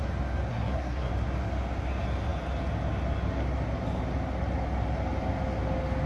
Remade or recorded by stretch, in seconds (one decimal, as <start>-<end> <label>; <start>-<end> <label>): 0.0-0.5 recorded; 0.5-1.1 remade; 1.1-6.1 recorded